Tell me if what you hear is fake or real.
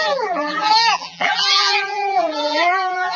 fake